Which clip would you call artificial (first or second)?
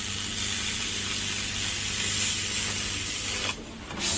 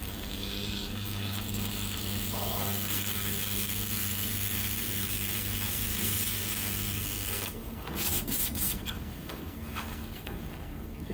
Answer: second